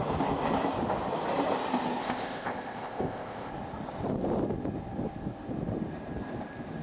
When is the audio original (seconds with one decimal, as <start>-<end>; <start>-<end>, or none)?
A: 0.0-2.0; 3.5-6.8